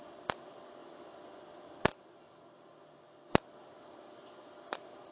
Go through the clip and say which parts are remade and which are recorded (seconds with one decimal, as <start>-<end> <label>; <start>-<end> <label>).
0.0-5.1 recorded